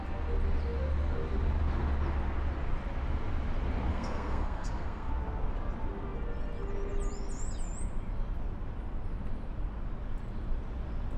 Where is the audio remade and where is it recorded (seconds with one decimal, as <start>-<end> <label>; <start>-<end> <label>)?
0.0-3.9 recorded; 3.9-5.1 remade; 5.1-11.2 recorded